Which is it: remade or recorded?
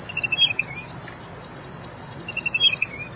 recorded